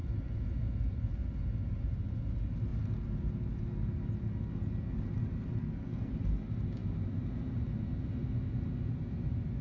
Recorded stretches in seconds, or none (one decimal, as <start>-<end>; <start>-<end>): 0.0-5.6; 6.1-9.6